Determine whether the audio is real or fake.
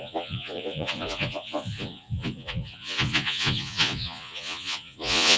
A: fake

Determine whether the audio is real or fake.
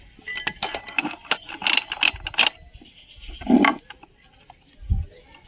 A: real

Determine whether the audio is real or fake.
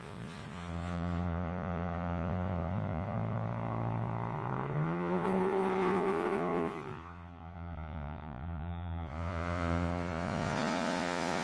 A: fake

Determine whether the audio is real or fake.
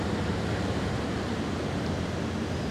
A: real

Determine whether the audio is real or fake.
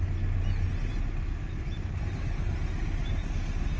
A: real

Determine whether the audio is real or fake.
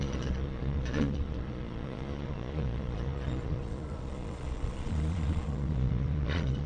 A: fake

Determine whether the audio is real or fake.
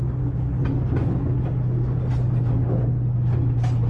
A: real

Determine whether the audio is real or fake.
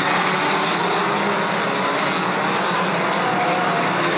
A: real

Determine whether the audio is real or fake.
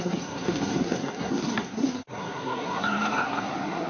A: fake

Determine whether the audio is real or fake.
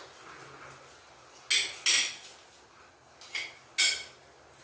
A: real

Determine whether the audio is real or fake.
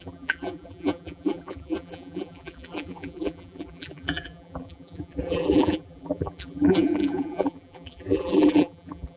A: fake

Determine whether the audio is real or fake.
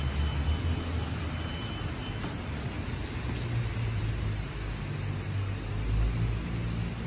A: real